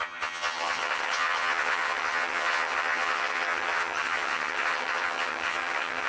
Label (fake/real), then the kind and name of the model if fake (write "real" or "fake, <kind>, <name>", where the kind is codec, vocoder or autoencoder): fake, vocoder, HiFi-GAN